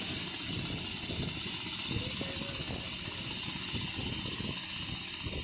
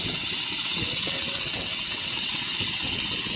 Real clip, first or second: first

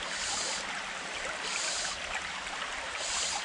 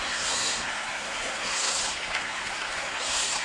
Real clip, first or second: first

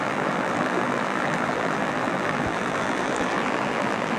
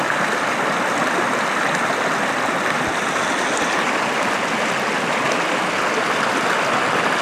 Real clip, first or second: second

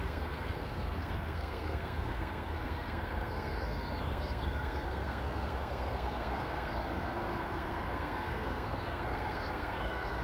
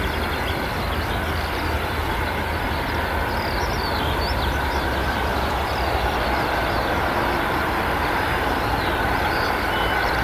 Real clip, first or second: second